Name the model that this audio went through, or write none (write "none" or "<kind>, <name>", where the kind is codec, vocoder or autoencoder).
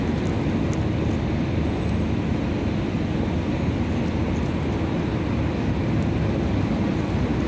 none